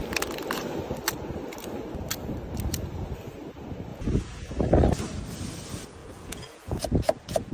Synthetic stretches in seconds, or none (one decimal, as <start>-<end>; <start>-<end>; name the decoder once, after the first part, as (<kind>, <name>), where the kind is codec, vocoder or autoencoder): 3.9-4.5 (vocoder, Vocos); 6.0-6.8